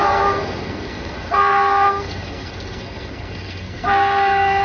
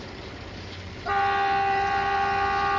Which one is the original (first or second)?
second